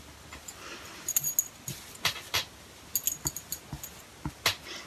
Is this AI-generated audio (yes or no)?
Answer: no